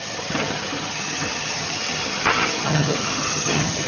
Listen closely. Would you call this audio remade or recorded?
remade